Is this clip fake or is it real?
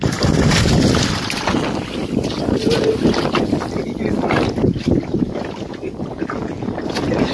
real